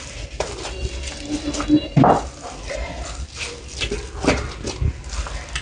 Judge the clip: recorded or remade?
recorded